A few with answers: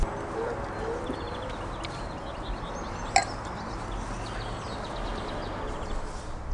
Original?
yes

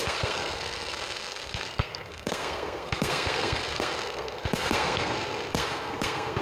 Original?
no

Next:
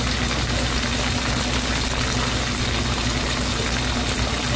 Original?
yes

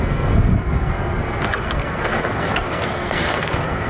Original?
no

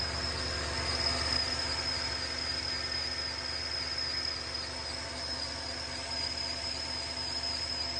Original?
yes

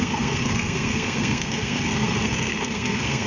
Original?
no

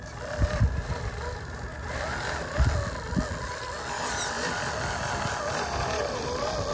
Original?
yes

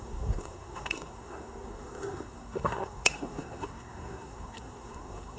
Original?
no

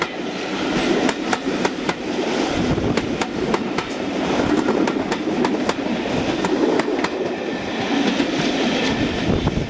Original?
yes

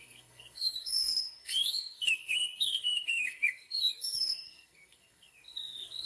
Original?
no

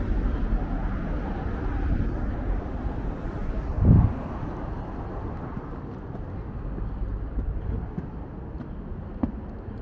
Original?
yes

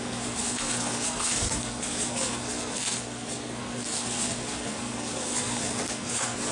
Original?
no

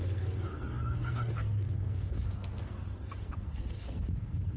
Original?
no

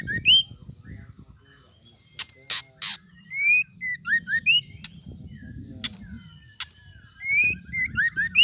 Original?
yes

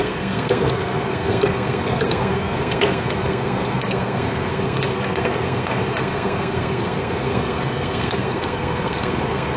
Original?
no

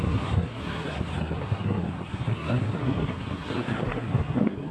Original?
no